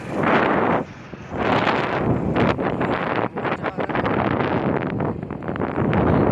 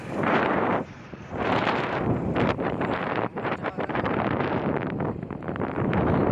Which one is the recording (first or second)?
first